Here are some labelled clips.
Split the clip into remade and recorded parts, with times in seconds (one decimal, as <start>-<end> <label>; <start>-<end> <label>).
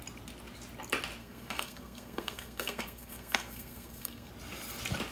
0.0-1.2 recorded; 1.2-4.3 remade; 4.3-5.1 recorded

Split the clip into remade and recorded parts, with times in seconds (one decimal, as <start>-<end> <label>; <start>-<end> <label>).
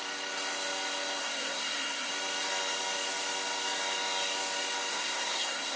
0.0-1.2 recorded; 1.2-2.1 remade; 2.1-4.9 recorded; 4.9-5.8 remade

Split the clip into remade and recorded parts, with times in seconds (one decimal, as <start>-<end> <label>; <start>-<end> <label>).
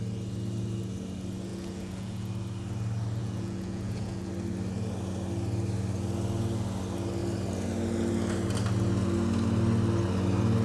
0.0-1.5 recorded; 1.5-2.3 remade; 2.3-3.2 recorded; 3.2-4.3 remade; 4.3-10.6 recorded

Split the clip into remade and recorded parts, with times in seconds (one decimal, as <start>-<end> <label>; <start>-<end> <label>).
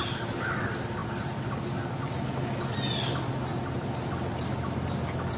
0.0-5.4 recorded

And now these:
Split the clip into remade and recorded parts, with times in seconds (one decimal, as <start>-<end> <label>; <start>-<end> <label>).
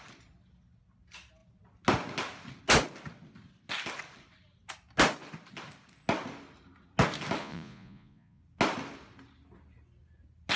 0.0-7.4 recorded; 7.4-8.4 remade; 8.4-10.6 recorded